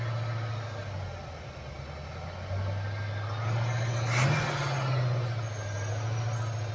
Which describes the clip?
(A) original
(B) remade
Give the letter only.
A